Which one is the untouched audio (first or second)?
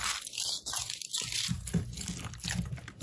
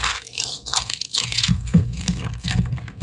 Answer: first